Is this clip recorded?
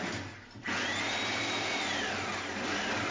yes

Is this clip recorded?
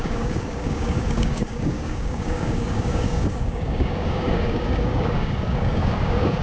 no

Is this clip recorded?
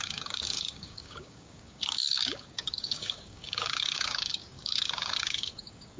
no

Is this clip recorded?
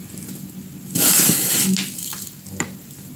yes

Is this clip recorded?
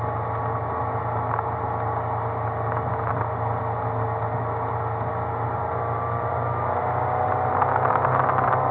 yes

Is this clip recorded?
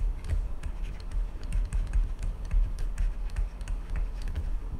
no